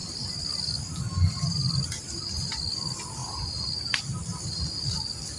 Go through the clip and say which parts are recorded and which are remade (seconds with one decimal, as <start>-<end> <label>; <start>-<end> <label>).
0.0-3.2 recorded; 3.2-4.0 remade; 4.0-5.4 recorded